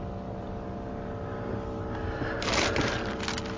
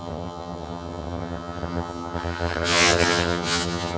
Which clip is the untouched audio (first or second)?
first